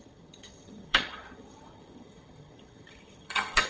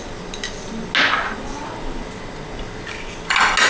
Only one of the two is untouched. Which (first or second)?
second